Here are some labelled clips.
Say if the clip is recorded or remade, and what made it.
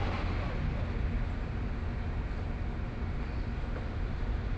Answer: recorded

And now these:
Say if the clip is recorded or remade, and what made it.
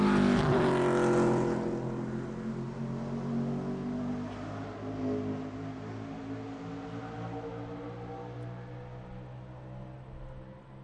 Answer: recorded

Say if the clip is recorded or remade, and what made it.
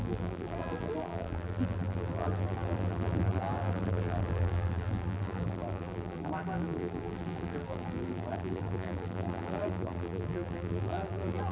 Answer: remade, vocoder, BigVGAN v2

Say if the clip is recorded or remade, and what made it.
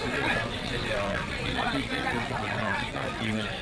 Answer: remade, vocoder, WaveNeXt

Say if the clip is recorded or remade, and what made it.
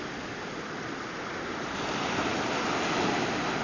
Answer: recorded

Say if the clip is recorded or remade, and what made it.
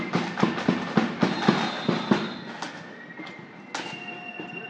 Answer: recorded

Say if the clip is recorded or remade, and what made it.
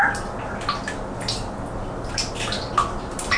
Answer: recorded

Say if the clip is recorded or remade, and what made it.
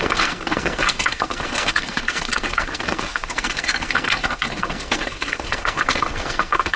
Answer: remade, codec, SNAC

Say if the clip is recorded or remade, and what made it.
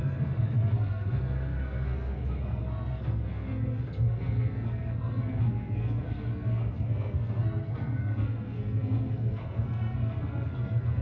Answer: remade, codec, SNAC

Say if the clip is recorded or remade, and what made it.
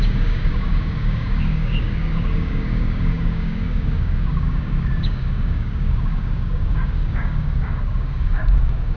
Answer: remade, codec, DAC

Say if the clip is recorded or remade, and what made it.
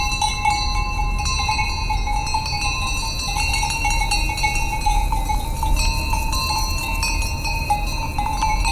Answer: recorded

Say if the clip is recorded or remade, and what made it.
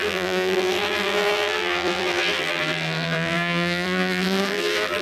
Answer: remade, vocoder, BigVGAN v2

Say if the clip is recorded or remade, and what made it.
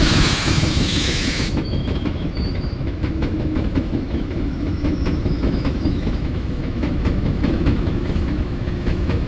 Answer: remade, autoencoder, DAC-VAE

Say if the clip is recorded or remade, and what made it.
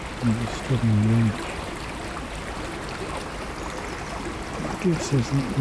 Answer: recorded